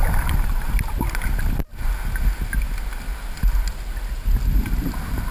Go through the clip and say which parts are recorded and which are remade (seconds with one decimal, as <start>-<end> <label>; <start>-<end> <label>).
0.0-5.3 recorded